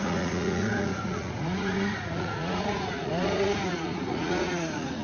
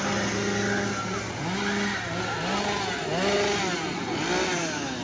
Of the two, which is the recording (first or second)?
second